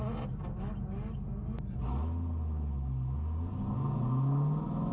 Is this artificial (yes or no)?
no